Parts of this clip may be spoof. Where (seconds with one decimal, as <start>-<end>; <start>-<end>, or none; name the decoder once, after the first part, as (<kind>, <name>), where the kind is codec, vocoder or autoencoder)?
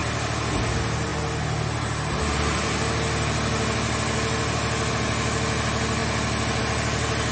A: none